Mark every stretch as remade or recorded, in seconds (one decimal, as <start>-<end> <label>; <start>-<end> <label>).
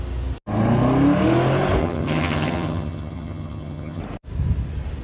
0.0-1.8 recorded; 1.8-4.0 remade; 4.0-5.0 recorded